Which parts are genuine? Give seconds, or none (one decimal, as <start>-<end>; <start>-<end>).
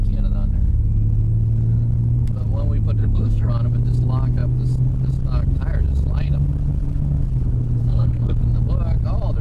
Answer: 0.0-3.0; 3.5-7.8; 8.4-9.4